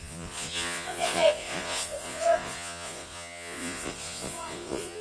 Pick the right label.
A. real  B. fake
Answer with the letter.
B